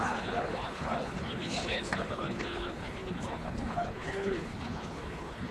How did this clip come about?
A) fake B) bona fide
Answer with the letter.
A